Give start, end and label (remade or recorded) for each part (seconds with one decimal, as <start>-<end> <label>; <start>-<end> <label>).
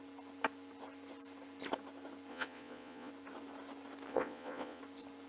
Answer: 0.0-2.3 recorded; 2.3-3.1 remade; 3.1-4.1 recorded; 4.1-4.8 remade; 4.8-5.3 recorded